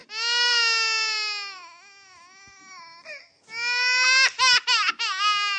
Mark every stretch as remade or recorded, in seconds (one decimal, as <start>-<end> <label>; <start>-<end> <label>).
0.0-5.6 recorded